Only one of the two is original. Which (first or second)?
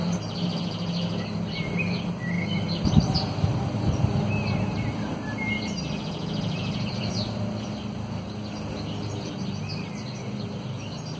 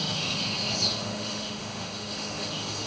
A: first